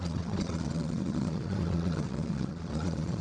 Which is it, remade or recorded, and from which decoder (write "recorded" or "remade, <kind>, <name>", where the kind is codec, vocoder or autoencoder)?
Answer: remade, vocoder, Vocos